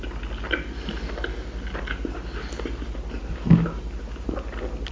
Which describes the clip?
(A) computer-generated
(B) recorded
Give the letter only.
B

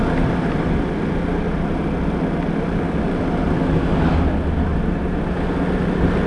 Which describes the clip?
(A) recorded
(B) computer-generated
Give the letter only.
A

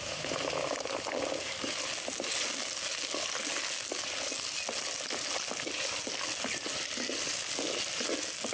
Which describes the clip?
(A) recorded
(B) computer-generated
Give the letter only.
A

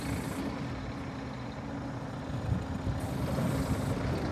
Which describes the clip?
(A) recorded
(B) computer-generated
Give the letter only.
A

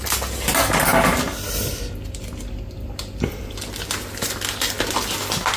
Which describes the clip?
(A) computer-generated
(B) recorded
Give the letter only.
B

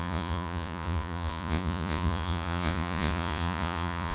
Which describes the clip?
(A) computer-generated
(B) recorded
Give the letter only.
A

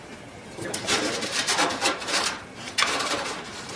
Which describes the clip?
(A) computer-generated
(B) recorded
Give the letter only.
A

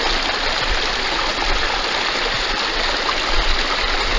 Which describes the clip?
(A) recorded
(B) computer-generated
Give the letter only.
A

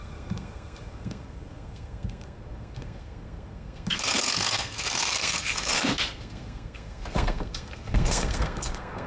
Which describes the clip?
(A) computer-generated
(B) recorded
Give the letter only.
A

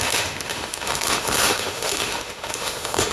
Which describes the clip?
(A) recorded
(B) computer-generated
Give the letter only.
B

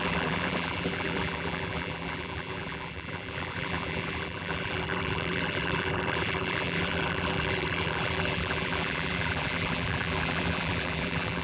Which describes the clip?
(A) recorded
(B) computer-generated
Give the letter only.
B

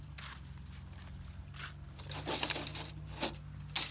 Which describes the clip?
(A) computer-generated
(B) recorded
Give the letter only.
B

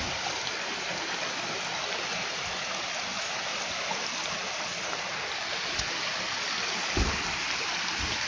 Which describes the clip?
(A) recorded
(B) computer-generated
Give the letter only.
A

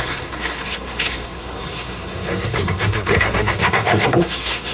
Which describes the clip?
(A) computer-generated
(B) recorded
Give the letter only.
A